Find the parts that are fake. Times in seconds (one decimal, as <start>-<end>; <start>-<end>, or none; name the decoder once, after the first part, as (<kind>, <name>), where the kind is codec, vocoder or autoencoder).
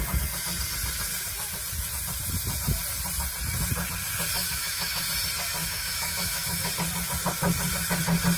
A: 4.4-5.0 (autoencoder, DAC-VAE); 5.6-6.7